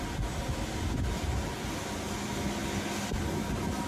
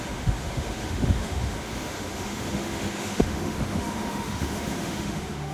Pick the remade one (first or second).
second